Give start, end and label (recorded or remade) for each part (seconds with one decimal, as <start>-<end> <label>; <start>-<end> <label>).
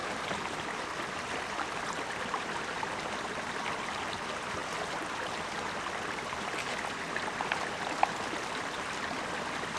0.0-9.8 recorded